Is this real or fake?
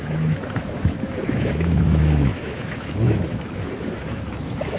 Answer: fake